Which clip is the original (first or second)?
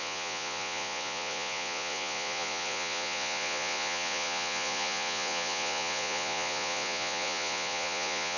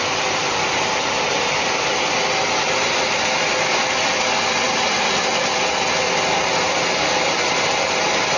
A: second